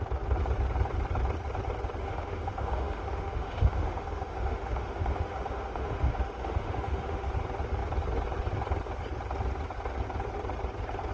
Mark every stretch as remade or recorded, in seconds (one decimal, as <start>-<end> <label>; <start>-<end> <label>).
0.0-2.0 recorded; 2.0-7.3 remade; 7.3-11.1 recorded